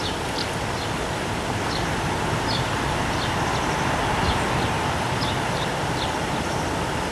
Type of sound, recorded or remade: recorded